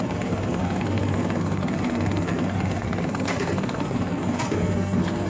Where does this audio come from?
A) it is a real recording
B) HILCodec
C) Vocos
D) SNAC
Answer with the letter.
D